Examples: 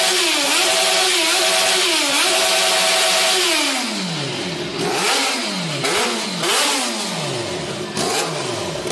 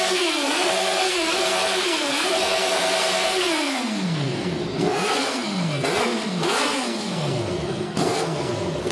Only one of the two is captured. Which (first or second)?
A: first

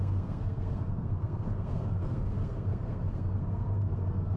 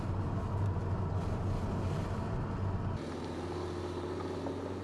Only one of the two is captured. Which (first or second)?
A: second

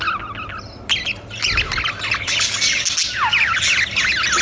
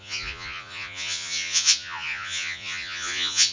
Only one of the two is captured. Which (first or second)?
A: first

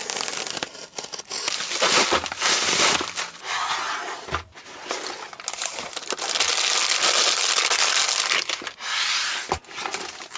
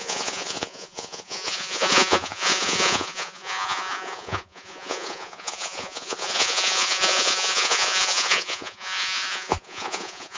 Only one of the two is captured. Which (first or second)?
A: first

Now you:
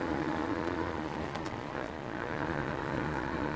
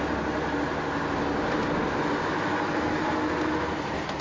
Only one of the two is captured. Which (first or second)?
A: second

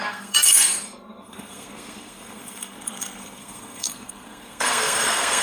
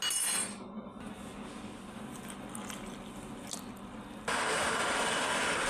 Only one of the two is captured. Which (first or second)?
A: second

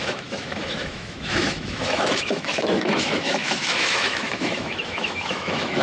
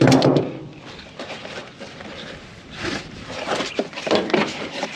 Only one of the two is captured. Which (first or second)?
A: second